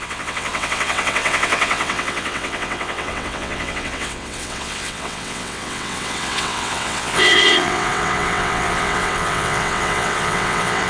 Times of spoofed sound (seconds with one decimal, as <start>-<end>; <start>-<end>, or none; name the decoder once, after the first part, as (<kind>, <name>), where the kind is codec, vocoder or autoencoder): 0.0-10.9 (vocoder, WaveNeXt)